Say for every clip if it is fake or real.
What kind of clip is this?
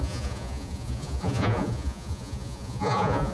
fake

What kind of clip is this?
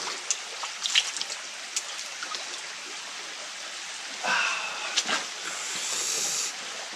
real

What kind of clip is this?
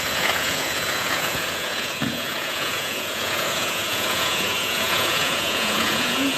fake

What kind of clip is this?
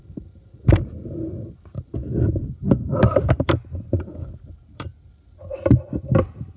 real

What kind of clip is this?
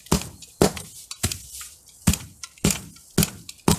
real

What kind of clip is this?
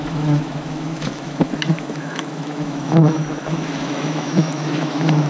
fake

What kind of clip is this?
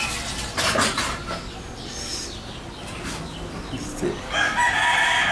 real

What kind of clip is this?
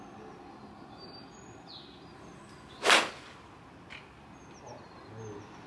real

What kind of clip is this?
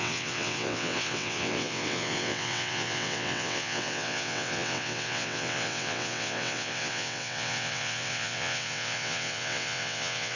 fake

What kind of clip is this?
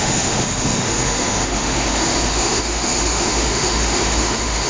fake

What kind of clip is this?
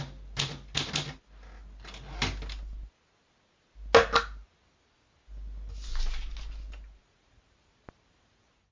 real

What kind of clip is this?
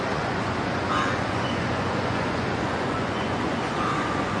fake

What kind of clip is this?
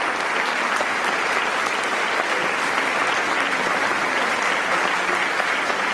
real